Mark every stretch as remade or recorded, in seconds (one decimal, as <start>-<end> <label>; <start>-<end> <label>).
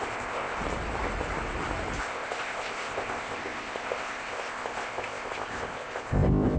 0.0-0.6 remade; 0.6-2.0 recorded; 2.0-6.6 remade